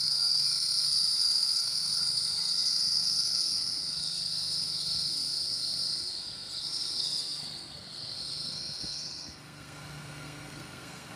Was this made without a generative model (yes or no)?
no